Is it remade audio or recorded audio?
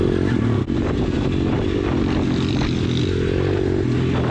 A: recorded